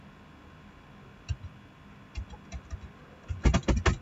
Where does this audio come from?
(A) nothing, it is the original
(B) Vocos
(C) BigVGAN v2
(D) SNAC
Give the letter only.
A